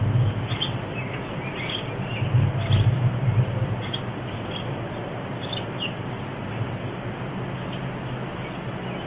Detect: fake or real real